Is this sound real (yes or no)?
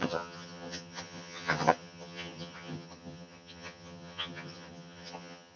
no